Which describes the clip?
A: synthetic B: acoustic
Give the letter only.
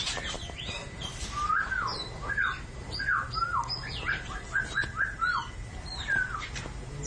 B